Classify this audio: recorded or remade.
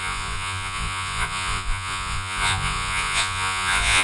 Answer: remade